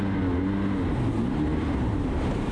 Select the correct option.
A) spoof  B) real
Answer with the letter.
B